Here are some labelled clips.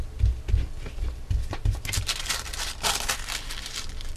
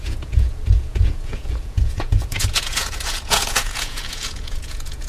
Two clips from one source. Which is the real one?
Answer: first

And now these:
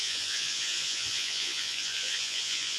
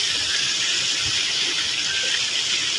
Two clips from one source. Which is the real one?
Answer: second